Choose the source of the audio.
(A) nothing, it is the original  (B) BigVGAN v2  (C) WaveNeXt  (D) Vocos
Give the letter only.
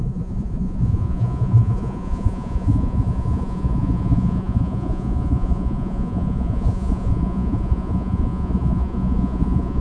D